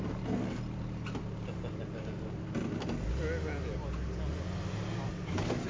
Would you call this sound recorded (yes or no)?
yes